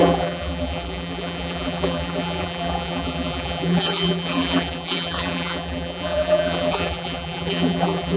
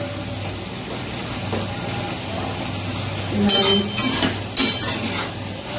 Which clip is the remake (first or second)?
first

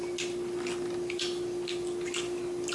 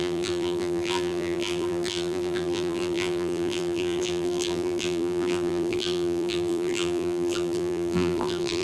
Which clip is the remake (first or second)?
second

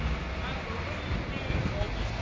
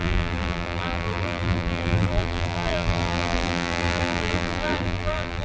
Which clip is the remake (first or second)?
second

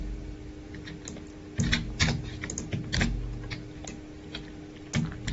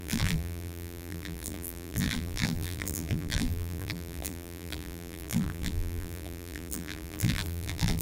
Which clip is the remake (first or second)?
second